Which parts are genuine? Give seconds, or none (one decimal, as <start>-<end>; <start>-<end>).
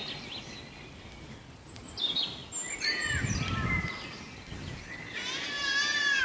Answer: 0.0-6.2